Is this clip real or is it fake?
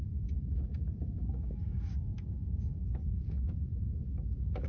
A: fake